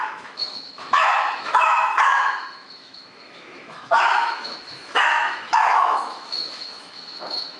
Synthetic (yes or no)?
yes